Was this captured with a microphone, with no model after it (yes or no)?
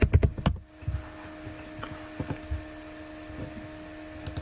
yes